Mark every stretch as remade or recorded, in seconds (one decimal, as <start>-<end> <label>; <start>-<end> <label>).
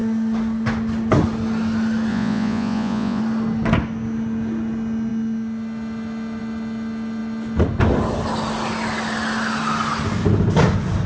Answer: 0.0-2.1 recorded; 2.1-3.2 remade; 3.2-11.1 recorded